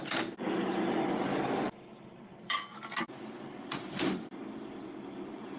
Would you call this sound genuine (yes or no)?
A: no